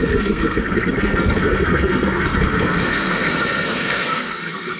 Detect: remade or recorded remade